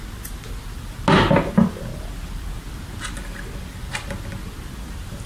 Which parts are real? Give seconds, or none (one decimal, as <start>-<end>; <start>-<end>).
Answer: 0.0-5.3